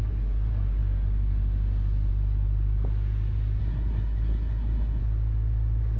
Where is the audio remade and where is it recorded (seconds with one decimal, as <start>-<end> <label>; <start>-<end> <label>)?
0.0-3.6 recorded; 3.6-5.0 remade; 5.0-6.0 recorded